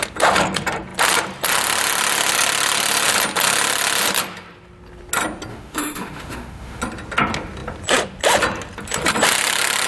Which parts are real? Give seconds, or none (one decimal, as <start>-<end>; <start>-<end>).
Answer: 0.0-5.5; 6.8-9.9